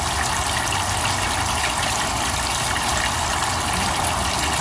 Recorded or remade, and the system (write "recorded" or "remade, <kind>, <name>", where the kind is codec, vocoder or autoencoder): recorded